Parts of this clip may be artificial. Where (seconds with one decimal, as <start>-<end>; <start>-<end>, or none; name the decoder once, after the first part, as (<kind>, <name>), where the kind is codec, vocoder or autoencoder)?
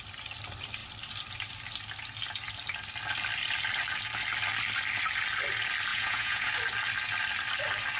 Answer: 5.9-6.5 (vocoder, Vocos)